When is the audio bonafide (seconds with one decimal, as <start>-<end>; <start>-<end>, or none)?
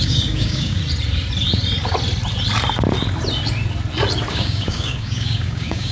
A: 0.8-4.3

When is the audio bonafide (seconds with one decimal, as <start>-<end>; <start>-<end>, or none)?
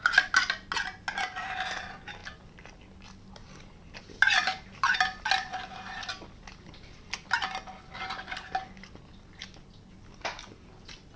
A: 0.0-11.2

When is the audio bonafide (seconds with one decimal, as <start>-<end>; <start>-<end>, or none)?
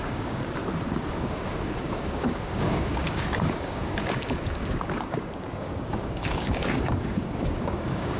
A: 0.6-1.1